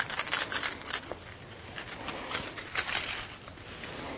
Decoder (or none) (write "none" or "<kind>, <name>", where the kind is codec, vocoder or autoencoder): none